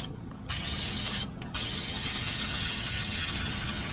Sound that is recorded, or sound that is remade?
remade